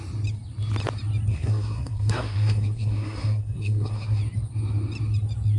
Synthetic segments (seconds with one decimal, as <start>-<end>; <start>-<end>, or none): 1.3-4.2